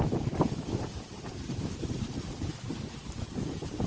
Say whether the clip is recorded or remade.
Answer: recorded